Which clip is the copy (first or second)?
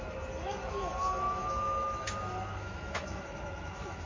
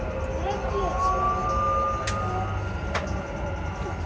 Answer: first